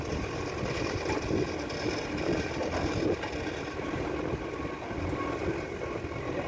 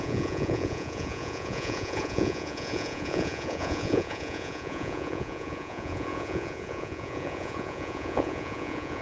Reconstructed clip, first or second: second